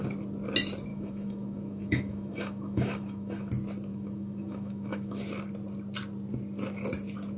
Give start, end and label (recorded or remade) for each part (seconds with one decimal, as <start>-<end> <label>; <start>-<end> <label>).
0.0-0.9 recorded; 0.9-3.5 remade; 3.5-3.9 recorded; 3.9-5.2 remade; 5.2-7.4 recorded